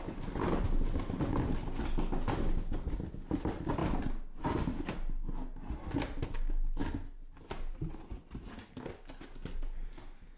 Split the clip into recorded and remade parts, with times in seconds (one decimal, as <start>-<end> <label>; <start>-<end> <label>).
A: 0.0-10.4 recorded

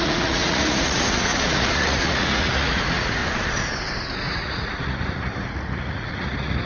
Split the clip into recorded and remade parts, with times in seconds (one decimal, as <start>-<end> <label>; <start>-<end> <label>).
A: 0.0-3.2 remade; 3.2-4.2 recorded; 4.2-6.7 remade